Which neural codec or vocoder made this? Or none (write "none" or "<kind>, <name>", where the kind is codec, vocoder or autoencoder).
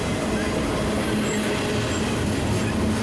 none